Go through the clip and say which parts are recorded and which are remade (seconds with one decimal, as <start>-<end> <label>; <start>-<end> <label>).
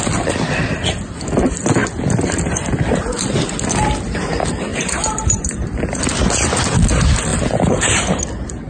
0.0-4.7 recorded; 4.7-6.0 remade; 6.0-7.3 recorded; 7.3-8.2 remade; 8.2-8.7 recorded